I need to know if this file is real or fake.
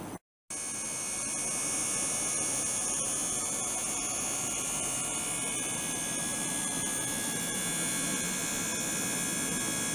real